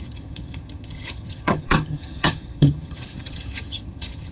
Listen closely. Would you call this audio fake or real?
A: fake